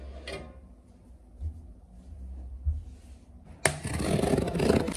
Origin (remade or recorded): recorded